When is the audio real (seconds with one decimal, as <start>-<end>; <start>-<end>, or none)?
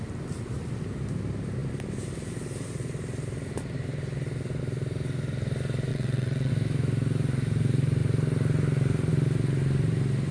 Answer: 0.0-5.9; 6.5-10.3